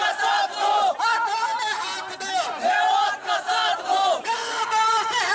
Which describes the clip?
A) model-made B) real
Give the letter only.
A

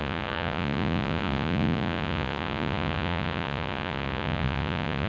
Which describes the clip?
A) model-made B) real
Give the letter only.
A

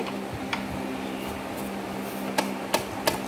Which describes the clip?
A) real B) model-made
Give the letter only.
A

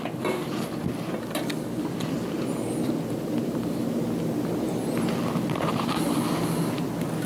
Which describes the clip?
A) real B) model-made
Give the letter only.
A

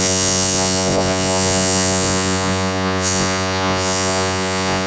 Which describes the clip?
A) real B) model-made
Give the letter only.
B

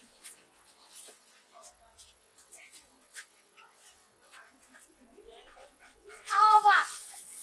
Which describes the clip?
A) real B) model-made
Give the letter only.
B